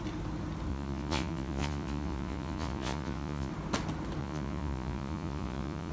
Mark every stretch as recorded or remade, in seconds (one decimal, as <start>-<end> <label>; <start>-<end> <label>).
0.0-0.7 recorded; 0.7-3.5 remade; 3.5-4.2 recorded; 4.2-5.9 remade